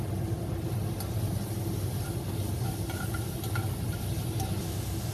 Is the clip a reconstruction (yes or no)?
no